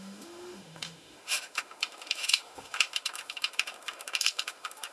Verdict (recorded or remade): remade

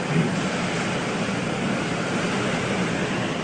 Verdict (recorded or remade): recorded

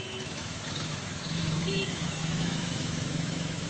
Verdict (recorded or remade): remade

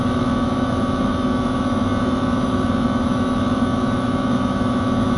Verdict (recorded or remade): remade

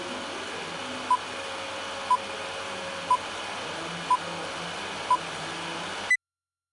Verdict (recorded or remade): recorded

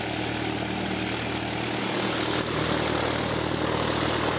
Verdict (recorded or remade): recorded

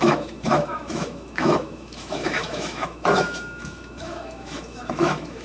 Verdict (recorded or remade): remade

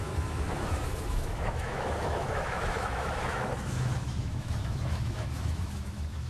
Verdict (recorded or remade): remade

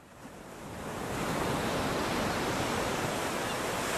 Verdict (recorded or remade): recorded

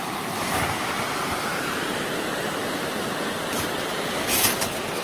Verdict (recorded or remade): recorded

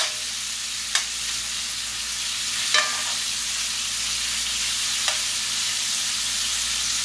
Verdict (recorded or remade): recorded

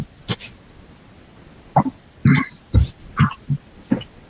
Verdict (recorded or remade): recorded